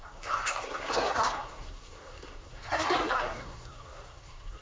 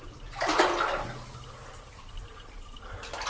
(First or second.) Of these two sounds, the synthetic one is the first